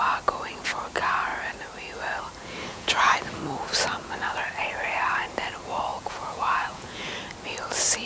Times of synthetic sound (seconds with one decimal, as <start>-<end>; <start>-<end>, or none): 2.7-3.2; 5.9-7.1